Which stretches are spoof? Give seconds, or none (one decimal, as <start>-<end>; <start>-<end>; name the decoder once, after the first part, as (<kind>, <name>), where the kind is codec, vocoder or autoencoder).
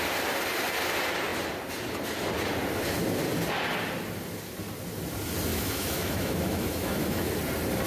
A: 5.5-7.3 (autoencoder, DAC-VAE)